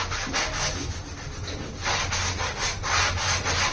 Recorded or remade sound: recorded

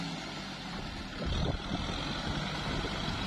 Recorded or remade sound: recorded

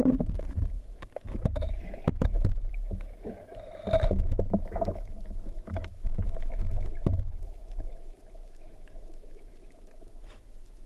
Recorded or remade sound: remade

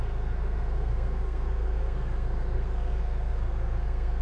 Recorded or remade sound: remade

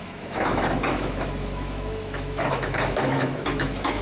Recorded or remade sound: remade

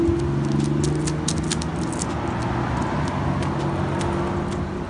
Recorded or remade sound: recorded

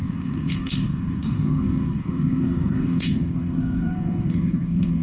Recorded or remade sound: remade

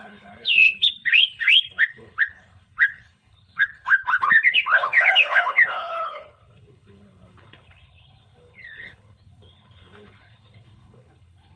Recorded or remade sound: remade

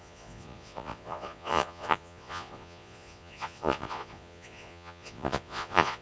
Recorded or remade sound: remade